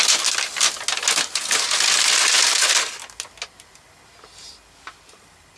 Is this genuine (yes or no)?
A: yes